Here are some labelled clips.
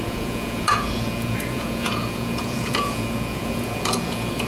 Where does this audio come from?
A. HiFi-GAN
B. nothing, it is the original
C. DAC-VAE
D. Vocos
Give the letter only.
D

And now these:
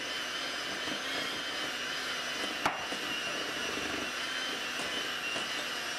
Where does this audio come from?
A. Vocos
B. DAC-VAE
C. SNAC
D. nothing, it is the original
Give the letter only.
D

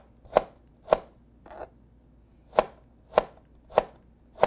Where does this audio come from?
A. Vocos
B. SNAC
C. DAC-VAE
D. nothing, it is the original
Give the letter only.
D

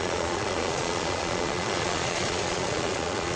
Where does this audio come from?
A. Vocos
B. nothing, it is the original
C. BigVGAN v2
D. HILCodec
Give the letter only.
A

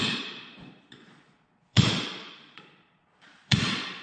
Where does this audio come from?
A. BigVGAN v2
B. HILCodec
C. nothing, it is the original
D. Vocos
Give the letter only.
D